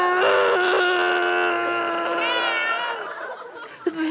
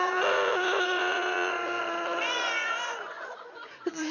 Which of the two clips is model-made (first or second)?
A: second